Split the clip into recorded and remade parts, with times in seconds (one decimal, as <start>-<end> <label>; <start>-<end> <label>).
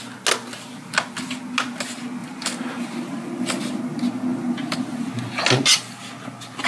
0.0-2.2 recorded; 2.2-3.3 remade; 3.3-4.3 recorded; 4.3-5.1 remade; 5.1-6.7 recorded